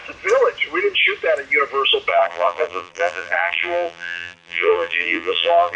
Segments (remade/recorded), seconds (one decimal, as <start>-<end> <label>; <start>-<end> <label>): 0.0-2.1 recorded; 2.1-5.8 remade